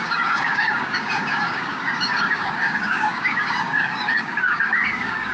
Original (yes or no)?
no